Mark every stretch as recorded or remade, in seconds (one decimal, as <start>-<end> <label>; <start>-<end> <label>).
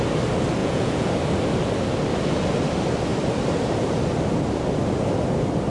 0.0-0.6 recorded; 0.6-1.1 remade; 1.1-5.7 recorded